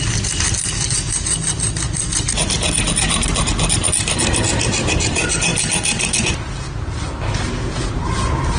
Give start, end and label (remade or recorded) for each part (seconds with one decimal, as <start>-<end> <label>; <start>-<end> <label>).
0.0-8.6 recorded